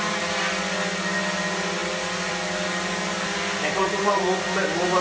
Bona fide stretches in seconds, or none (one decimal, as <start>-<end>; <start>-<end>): 0.0-5.0